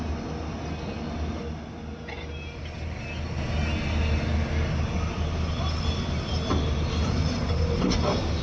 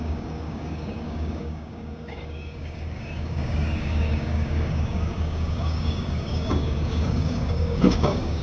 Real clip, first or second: first